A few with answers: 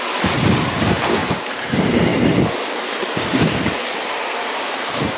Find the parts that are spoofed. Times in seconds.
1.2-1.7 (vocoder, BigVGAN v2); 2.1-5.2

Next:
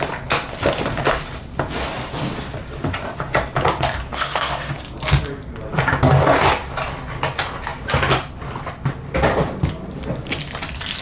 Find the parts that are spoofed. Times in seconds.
4.1-4.7 (codec, SNAC)

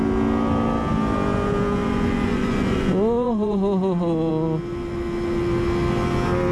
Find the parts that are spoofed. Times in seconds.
1.8-4.3 (vocoder, Vocos)

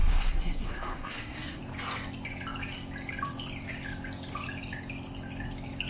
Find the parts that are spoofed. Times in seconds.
0.0-1.6 (codec, SNAC)

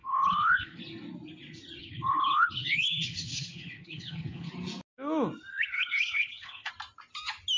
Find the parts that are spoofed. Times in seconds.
0.0-0.8 (codec, HILCodec); 1.8-4.5; 5.5-6.7

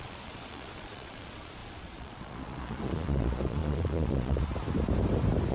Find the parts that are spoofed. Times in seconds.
0.0-4.5 (vocoder, Vocos)

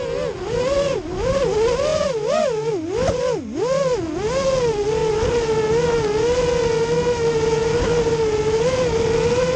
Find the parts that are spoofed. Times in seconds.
none

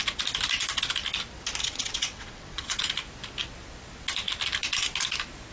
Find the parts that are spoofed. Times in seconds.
1.6-2.8 (vocoder, WaveNeXt)